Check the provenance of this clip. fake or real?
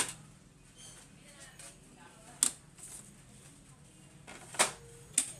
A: real